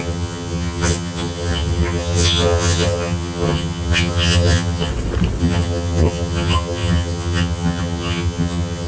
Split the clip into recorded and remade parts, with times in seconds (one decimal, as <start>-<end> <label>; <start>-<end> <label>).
0.0-4.9 remade; 4.9-5.4 recorded; 5.4-8.9 remade